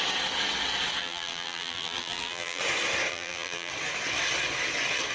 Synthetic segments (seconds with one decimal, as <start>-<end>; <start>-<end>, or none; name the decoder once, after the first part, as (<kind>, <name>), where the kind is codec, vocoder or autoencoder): 1.0-2.6 (vocoder, BigVGAN v2); 3.1-3.7